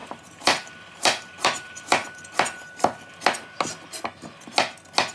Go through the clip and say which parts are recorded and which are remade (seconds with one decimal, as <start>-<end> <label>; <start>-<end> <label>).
0.0-3.1 remade; 3.1-5.1 recorded